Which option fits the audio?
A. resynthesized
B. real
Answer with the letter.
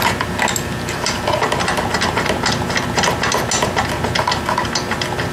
B